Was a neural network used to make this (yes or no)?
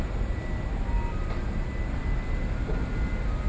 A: no